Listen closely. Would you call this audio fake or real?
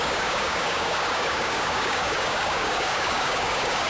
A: fake